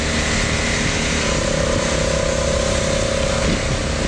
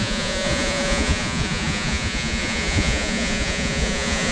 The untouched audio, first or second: first